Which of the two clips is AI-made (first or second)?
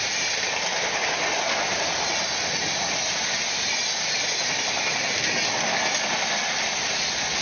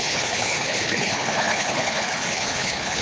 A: second